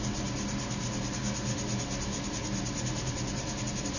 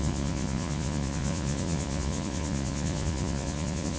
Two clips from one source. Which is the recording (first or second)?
first